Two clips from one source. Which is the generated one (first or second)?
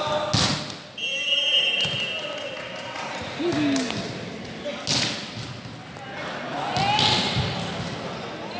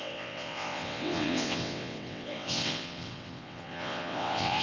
second